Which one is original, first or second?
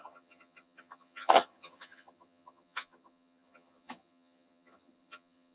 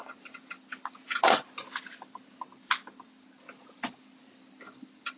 second